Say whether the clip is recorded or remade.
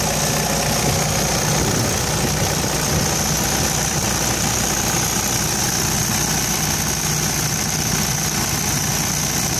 recorded